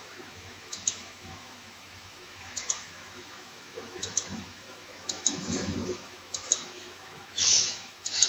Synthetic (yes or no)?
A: yes